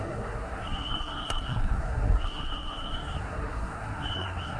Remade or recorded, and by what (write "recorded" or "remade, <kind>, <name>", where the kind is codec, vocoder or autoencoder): remade, codec, SNAC